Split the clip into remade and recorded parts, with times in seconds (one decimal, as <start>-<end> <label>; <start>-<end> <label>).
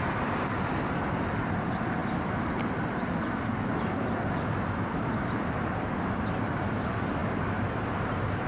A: 0.0-8.5 remade